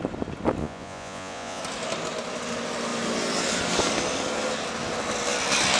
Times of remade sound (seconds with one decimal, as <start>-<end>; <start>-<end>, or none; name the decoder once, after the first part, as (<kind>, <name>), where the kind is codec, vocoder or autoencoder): 0.6-1.6 (vocoder, Vocos)